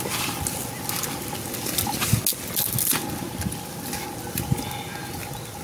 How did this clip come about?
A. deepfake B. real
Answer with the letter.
B